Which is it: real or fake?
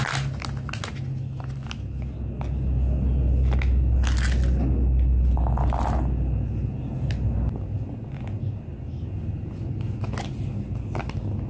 real